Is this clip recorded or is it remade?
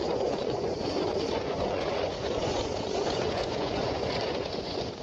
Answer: remade